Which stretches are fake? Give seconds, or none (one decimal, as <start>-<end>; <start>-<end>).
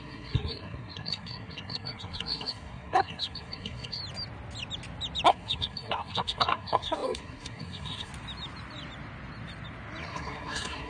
0.0-4.0; 5.3-8.1; 10.0-10.9